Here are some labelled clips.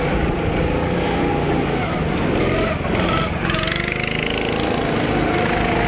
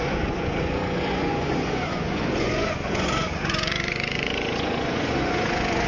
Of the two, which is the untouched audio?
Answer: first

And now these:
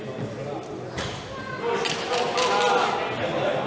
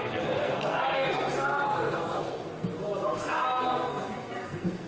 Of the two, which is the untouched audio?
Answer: first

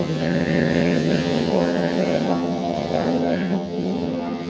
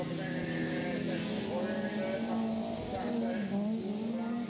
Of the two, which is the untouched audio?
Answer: second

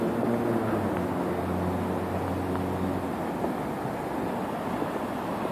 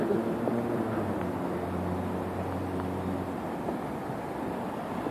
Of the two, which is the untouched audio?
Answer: first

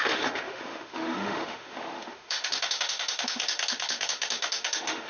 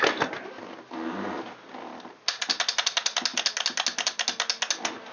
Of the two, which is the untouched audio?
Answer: second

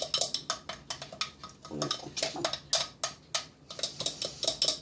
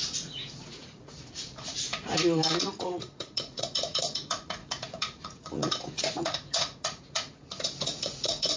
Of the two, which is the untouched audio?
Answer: first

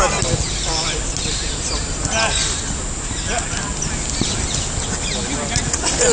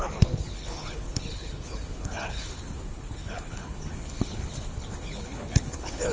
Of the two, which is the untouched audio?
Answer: first